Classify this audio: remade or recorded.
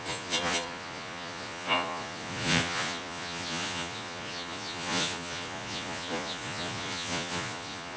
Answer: remade